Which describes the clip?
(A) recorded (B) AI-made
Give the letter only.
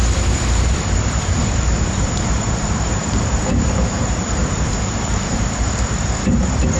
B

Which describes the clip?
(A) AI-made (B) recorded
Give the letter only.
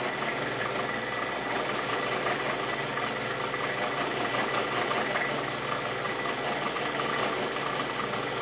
B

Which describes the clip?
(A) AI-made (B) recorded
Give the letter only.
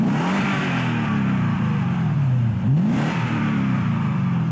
A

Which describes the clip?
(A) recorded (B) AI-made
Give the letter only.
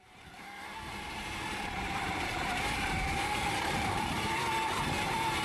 B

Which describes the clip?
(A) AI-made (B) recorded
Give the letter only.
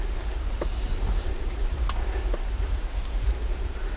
A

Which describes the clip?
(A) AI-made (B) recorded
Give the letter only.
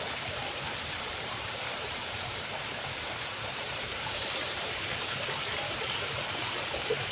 A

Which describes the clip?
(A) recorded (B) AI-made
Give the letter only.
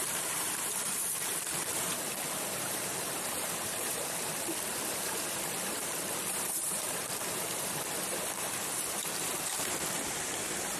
B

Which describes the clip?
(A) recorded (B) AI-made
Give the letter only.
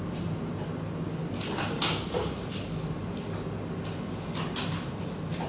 A